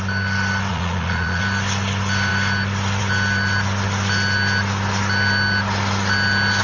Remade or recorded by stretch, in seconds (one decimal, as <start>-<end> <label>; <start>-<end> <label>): 0.0-0.7 recorded; 0.7-1.4 remade; 1.4-6.6 recorded